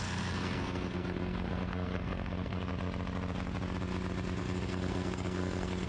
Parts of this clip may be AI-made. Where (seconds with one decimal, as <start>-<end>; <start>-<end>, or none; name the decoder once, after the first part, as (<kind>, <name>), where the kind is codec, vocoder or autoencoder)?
0.0-2.7 (codec, SNAC); 4.4-5.9